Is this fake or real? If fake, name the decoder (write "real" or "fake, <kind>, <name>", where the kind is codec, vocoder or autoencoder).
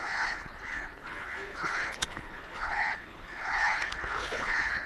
fake, codec, HILCodec